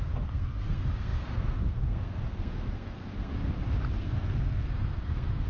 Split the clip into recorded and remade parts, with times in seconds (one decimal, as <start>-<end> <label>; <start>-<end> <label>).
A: 0.0-3.3 remade; 3.3-3.9 recorded; 3.9-5.5 remade